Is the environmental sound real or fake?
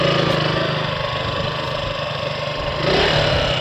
real